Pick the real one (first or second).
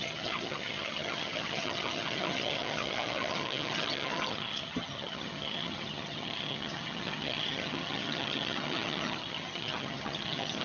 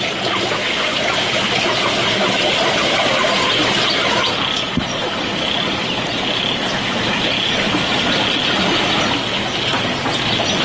second